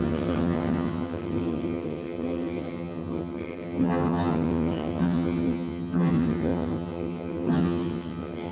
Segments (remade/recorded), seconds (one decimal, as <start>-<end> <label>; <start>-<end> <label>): 0.0-8.5 remade